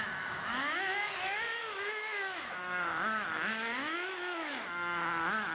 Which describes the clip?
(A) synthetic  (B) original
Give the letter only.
A